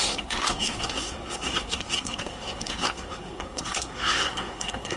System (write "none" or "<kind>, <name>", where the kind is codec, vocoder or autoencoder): codec, SNAC